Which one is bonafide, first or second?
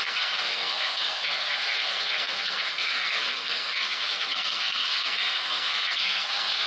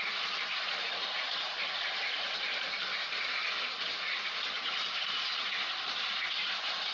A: second